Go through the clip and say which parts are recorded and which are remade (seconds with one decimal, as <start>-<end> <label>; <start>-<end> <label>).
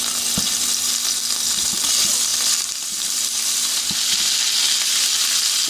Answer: 0.0-2.3 recorded; 2.3-3.8 remade; 3.8-5.7 recorded